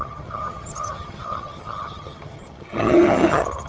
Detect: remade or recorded remade